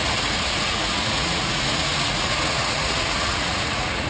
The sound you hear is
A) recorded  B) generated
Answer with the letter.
B